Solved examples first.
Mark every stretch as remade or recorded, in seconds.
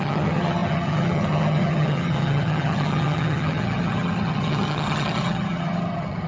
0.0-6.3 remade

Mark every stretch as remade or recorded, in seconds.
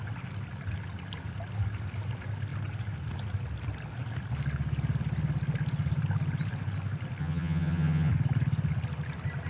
0.0-7.2 recorded; 7.2-8.1 remade; 8.1-9.5 recorded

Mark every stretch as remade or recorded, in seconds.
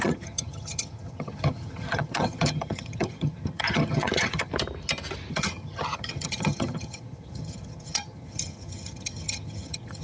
0.0-4.5 remade; 4.5-5.3 recorded; 5.3-10.0 remade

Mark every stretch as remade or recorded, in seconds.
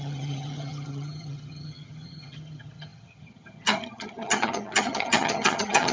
0.0-5.9 remade